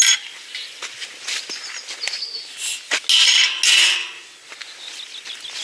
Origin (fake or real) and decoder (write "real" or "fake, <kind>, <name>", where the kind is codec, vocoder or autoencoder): real